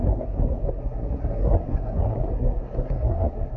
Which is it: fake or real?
fake